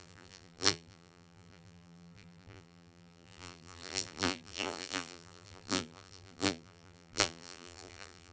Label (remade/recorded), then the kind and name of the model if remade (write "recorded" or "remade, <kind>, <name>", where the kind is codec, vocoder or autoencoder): remade, vocoder, BigVGAN v2